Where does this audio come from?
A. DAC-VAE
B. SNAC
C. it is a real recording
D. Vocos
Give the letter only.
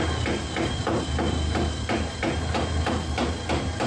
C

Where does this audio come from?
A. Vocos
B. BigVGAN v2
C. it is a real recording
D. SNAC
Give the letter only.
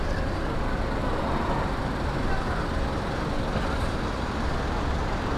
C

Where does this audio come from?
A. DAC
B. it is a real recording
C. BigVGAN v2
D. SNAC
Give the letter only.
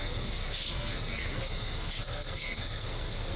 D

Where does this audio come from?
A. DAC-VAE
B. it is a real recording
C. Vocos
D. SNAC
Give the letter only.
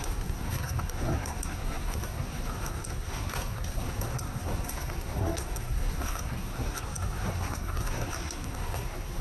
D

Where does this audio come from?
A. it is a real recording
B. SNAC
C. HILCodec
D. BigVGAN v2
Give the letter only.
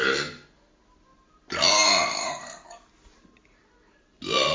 A